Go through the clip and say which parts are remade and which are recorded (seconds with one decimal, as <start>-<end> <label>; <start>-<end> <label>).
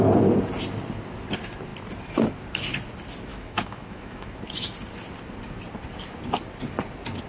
0.0-3.3 recorded; 3.3-4.4 remade; 4.4-7.3 recorded